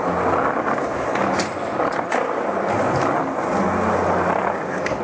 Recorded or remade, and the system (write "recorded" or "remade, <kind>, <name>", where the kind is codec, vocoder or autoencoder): recorded